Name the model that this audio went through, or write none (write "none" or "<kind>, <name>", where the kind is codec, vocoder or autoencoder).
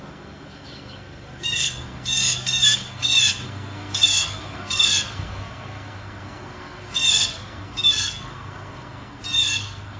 codec, SNAC